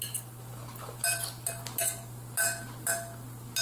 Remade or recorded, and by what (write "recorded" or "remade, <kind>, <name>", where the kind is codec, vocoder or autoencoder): recorded